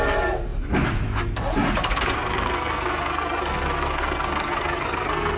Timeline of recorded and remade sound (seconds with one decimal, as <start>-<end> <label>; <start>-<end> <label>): 0.0-1.9 recorded; 1.9-5.4 remade